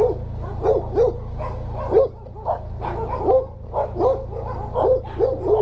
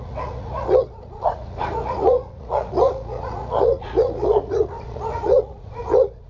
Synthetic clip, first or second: second